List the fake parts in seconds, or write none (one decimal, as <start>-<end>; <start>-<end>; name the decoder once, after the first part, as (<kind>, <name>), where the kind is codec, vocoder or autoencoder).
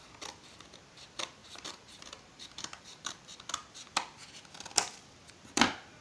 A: 1.4-3.2 (vocoder, BigVGAN v2)